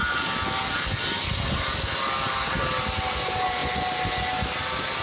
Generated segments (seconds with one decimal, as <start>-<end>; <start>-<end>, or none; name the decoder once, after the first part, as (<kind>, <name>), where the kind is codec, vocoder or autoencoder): none